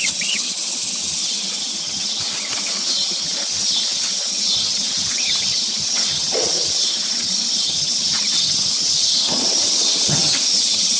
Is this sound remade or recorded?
remade